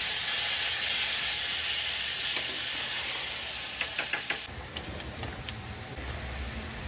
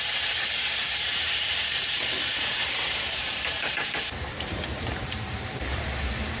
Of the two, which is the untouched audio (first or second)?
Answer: first